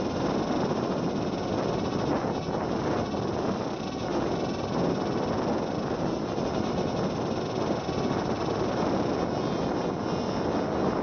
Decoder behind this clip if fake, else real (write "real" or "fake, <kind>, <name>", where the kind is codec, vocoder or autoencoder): real